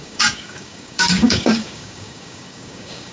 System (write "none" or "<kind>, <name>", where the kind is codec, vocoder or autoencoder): codec, DAC